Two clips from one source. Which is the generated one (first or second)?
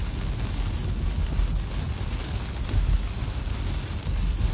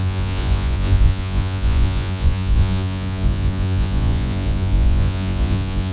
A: second